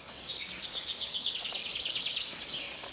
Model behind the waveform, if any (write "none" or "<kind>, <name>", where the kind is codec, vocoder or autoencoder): codec, DAC